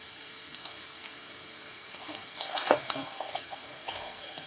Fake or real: fake